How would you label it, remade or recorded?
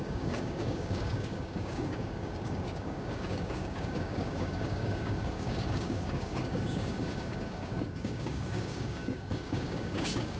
remade